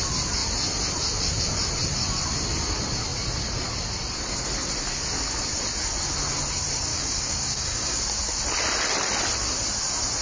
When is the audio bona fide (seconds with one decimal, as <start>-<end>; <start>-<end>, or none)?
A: 0.0-6.9; 8.0-10.2